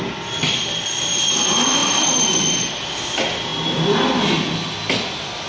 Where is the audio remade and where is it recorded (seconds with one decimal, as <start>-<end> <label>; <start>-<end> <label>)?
0.0-5.5 recorded